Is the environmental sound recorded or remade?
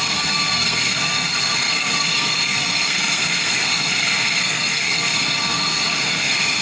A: remade